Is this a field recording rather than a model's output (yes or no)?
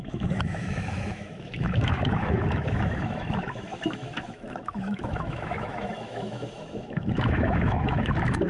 no